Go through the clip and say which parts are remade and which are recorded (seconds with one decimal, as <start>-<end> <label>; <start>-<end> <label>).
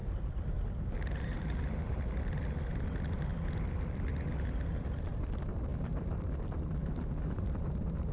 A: 0.0-4.1 remade; 4.1-4.7 recorded; 4.7-6.8 remade; 6.8-7.3 recorded; 7.3-8.1 remade